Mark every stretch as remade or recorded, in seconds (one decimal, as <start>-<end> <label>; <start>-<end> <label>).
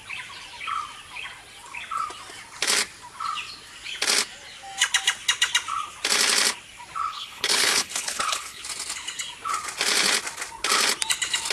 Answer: 0.0-7.1 recorded; 7.1-8.6 remade; 8.6-11.5 recorded